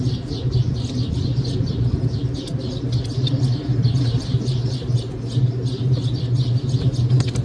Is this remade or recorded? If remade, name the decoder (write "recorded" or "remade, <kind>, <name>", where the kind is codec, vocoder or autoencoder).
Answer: recorded